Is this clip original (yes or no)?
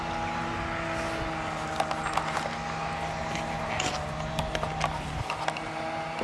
yes